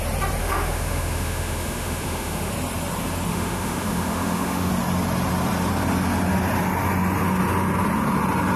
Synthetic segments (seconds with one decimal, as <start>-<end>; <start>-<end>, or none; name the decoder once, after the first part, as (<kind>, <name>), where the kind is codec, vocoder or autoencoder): 0.4-2.5 (autoencoder, DAC-VAE); 3.3-4.7

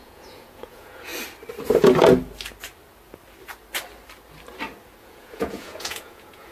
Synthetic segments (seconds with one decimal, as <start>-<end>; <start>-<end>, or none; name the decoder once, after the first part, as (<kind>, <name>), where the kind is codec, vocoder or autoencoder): 0.0-1.1 (vocoder, Vocos); 5.0-6.5

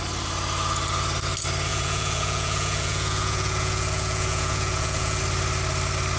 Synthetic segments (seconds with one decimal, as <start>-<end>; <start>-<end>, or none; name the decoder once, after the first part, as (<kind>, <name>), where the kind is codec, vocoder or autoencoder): 1.7-5.2 (vocoder, Vocos)

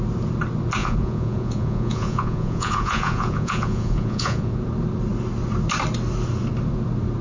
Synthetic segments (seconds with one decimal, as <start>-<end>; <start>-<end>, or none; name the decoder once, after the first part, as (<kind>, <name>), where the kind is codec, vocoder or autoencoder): 0.8-4.5 (vocoder, Vocos)